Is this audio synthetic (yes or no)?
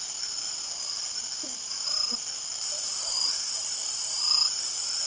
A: no